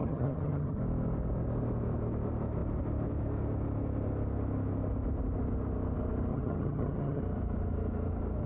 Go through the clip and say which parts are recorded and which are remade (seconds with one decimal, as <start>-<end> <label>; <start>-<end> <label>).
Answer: 0.0-0.8 remade; 0.8-6.3 recorded; 6.3-7.2 remade; 7.2-8.5 recorded